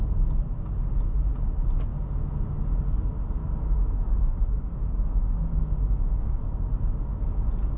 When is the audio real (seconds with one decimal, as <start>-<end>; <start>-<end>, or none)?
0.0-3.4; 6.7-7.8